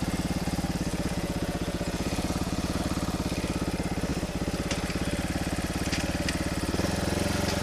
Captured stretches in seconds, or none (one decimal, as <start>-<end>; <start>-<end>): 0.0-0.9; 2.8-7.6

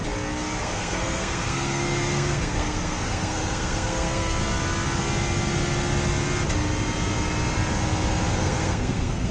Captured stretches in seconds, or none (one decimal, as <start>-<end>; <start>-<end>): 0.0-0.6; 4.4-8.3

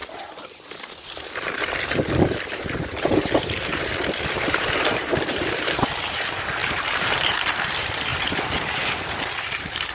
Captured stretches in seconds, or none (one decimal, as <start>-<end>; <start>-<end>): none